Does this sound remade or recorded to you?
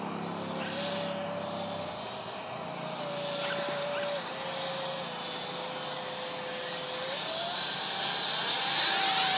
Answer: recorded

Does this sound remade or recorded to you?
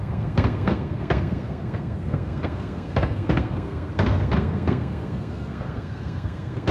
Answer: remade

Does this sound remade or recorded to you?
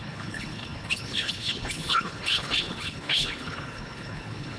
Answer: remade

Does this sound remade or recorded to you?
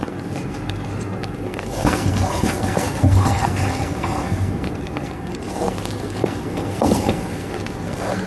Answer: remade